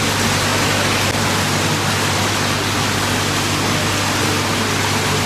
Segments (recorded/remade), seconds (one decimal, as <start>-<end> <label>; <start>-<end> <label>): 0.0-5.3 recorded